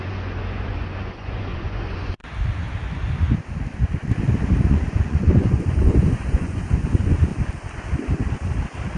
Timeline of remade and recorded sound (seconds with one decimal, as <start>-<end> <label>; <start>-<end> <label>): 0.0-2.2 remade; 2.2-4.7 recorded; 4.7-7.3 remade; 7.3-9.0 recorded